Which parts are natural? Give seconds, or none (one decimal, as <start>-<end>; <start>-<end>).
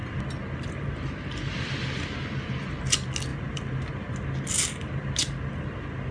0.0-3.3; 3.8-6.1